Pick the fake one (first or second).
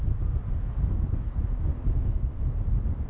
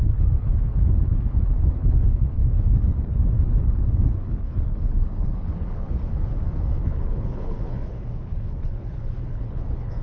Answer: second